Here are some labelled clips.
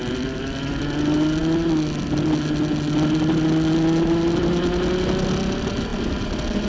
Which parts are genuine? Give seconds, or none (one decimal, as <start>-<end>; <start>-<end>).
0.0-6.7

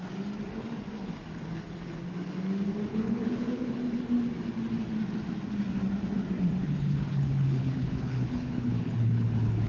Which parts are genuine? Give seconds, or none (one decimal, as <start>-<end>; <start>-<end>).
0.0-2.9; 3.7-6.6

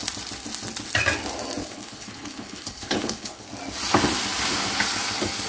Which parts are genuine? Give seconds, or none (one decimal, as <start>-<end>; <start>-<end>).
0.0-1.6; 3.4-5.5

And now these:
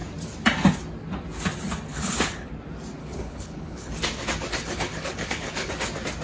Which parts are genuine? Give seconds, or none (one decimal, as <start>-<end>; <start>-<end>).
0.0-1.9; 2.5-3.0; 3.9-4.6; 5.7-6.2